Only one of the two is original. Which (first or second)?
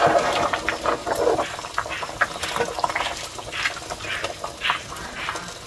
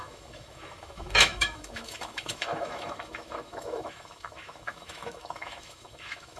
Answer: first